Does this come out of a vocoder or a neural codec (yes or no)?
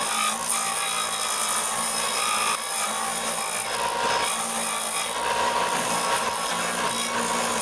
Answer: no